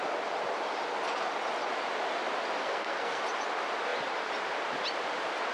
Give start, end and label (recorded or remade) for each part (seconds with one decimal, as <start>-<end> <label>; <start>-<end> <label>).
0.0-2.6 recorded; 2.6-3.2 remade; 3.2-5.5 recorded